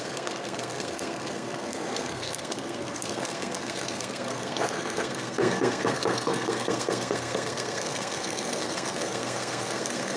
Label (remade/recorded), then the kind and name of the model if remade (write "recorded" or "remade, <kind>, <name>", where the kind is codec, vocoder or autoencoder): remade, codec, SNAC